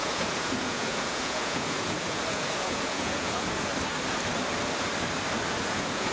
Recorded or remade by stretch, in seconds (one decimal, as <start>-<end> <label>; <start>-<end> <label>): 0.0-3.7 remade; 3.7-5.6 recorded; 5.6-6.1 remade